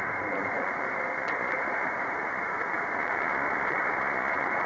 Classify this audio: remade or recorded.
remade